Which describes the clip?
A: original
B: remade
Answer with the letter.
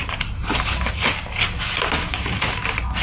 A